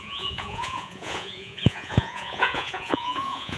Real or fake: fake